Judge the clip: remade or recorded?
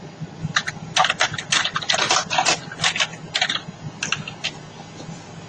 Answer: recorded